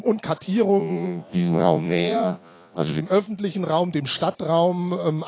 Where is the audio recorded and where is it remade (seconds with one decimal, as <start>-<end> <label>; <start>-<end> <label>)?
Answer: 0.0-0.8 recorded; 0.8-3.0 remade; 3.0-5.3 recorded